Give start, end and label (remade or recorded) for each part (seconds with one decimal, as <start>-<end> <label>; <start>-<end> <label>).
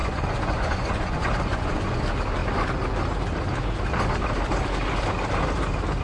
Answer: 0.0-2.0 remade; 2.0-6.0 recorded